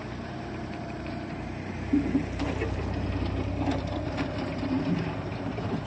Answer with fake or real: fake